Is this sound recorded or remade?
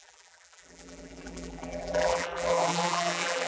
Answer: remade